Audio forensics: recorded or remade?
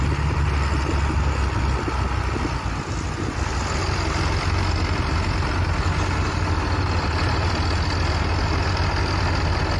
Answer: recorded